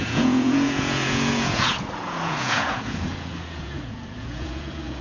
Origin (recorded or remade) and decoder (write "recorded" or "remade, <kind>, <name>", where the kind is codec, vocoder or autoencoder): remade, vocoder, Vocos